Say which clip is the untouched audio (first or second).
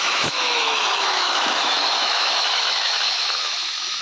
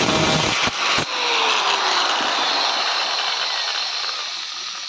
second